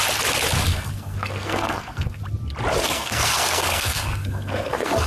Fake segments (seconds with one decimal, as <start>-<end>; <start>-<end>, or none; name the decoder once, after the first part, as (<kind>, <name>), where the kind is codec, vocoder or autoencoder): 0.7-2.2 (codec, SNAC); 2.8-5.1